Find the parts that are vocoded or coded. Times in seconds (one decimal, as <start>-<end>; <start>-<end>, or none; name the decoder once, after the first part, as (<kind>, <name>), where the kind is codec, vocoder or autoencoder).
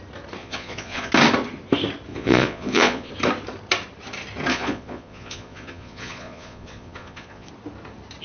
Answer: 0.4-1.1 (vocoder, Vocos); 2.1-3.1; 4.5-7.5